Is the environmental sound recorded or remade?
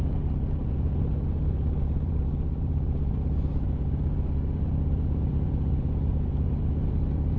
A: remade